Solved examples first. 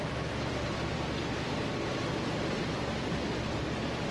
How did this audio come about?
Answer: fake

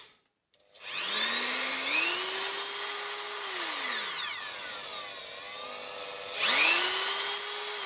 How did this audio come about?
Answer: real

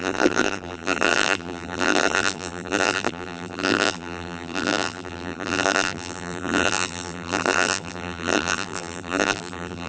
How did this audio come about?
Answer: fake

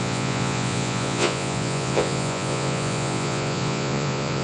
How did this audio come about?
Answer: fake